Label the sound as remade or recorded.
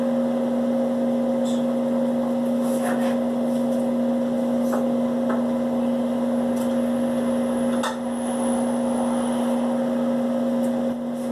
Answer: recorded